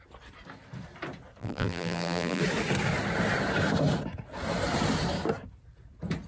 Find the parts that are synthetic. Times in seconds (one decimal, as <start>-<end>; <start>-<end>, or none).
1.4-2.4